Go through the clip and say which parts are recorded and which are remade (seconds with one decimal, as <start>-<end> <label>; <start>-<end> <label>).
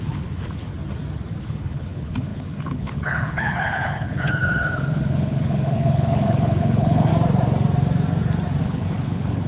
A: 0.0-0.7 remade; 0.7-1.4 recorded; 1.4-7.1 remade; 7.1-8.6 recorded; 8.6-9.5 remade